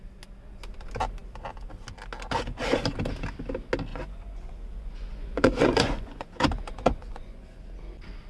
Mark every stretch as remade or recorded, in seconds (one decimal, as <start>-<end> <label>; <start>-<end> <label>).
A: 0.0-3.9 recorded; 3.9-7.6 remade; 7.6-8.3 recorded